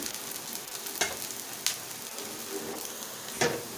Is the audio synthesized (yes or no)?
no